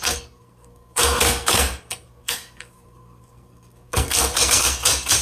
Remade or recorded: remade